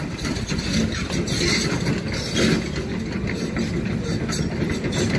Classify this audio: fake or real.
real